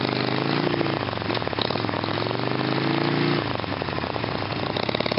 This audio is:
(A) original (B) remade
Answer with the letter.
A